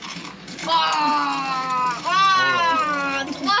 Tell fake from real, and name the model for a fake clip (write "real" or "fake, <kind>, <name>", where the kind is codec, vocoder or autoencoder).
real